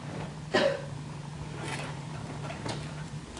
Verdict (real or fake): fake